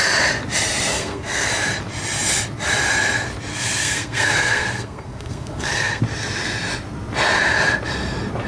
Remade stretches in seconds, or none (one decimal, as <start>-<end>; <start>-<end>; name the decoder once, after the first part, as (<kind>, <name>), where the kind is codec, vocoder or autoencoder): 0.9-1.5 (codec, SNAC); 3.5-6.0